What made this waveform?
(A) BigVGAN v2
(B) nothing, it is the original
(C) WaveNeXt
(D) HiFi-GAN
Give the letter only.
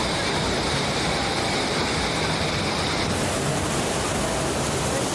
B